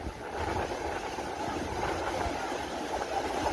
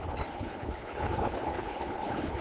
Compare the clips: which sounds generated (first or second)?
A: second